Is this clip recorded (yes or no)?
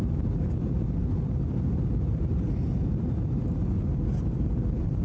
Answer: no